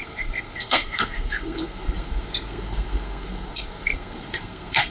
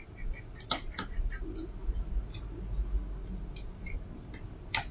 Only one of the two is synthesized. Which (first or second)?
first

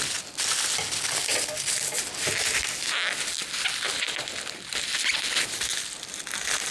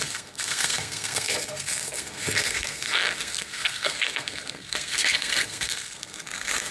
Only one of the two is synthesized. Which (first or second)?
second